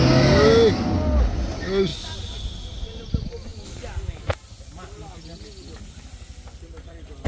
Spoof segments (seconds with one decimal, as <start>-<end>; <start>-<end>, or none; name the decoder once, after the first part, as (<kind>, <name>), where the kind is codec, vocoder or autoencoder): none